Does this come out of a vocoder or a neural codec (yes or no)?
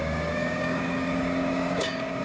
yes